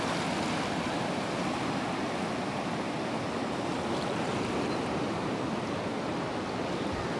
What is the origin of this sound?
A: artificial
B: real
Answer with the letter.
B